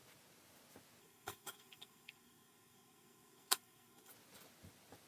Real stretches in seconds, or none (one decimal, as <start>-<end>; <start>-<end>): 0.0-1.0; 4.1-5.1